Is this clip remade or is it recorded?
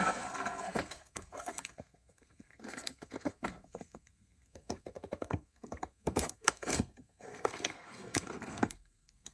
remade